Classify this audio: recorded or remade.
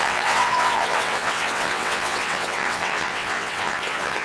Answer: remade